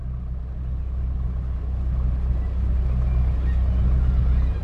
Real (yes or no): yes